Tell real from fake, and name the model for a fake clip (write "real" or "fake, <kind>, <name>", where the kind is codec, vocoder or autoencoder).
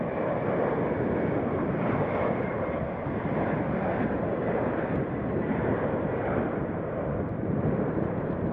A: fake, vocoder, BigVGAN v2